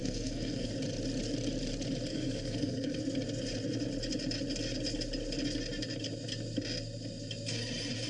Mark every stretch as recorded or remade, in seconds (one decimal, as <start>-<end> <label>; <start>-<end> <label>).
0.0-0.7 remade; 0.7-2.1 recorded; 2.1-3.0 remade; 3.0-8.1 recorded